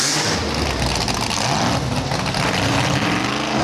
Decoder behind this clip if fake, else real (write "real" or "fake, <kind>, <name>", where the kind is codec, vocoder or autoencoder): real